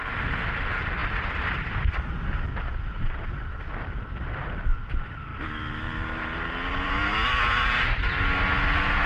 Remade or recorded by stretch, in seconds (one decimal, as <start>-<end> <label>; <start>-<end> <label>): 0.0-1.0 recorded; 1.0-1.8 remade; 1.8-2.5 recorded; 2.5-3.3 remade; 3.3-9.1 recorded